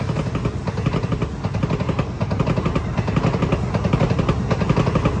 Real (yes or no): yes